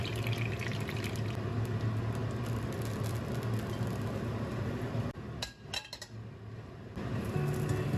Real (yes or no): yes